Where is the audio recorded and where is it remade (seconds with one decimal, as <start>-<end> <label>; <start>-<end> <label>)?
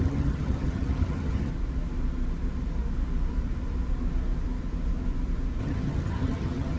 0.0-1.5 remade; 1.5-5.6 recorded; 5.6-6.8 remade